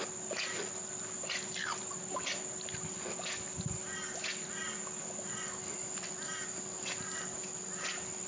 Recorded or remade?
recorded